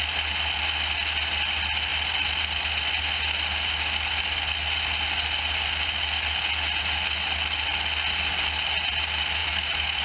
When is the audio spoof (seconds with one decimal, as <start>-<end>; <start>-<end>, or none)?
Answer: 9.4-10.0